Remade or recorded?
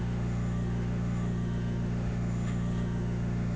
remade